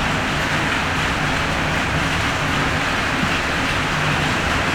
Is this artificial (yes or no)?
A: no